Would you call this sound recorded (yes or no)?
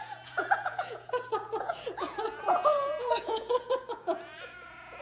no